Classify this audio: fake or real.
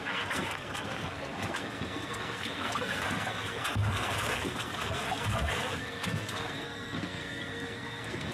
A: fake